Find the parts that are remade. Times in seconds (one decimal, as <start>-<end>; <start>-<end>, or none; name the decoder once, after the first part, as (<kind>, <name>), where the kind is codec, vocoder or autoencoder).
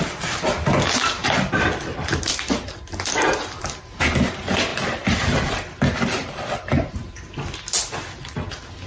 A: 1.2-2.5 (vocoder, BigVGAN v2); 4.7-6.9